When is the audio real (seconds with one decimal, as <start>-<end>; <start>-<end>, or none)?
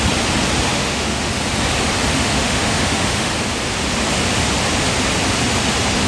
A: 0.0-0.7; 1.3-2.1; 3.3-6.1